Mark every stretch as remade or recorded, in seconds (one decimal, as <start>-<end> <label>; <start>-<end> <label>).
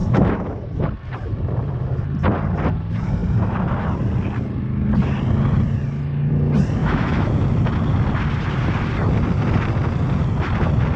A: 0.0-0.6 remade; 0.6-6.8 recorded; 6.8-7.3 remade; 7.3-11.0 recorded